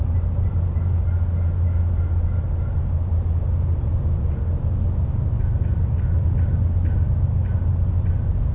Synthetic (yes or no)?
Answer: no